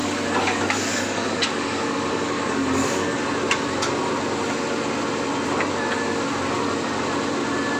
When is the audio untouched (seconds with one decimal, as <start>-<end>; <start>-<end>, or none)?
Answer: 3.2-7.8